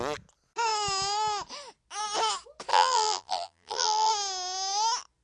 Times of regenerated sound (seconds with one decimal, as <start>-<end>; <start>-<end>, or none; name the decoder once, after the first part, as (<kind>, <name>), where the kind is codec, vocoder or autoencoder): 2.7-4.1 (vocoder, BigVGAN v2)